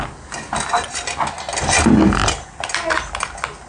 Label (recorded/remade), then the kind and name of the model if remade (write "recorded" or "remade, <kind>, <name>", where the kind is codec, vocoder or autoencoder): recorded